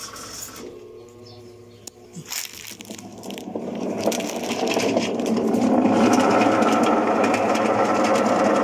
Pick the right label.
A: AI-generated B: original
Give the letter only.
B